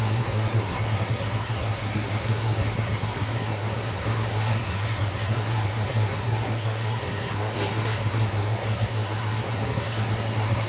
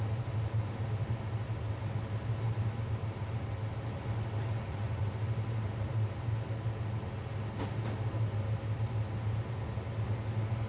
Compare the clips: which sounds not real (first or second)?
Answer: first